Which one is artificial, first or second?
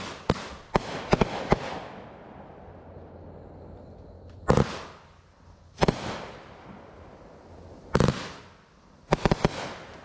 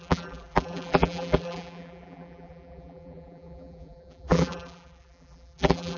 second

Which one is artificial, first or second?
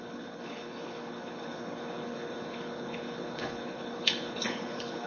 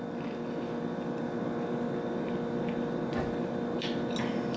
first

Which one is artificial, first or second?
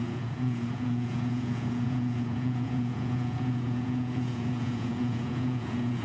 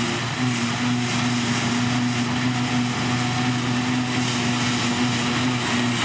first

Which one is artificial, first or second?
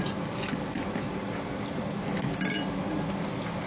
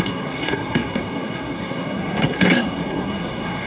second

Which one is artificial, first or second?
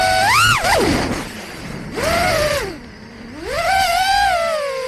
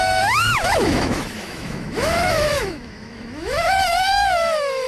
second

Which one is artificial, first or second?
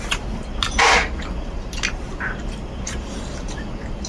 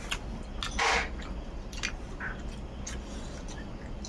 first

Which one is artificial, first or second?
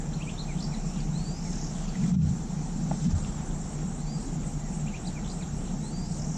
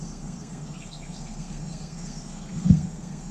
second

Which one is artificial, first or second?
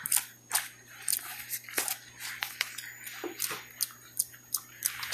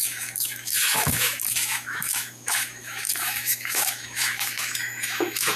second